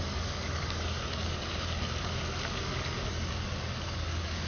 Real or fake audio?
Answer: fake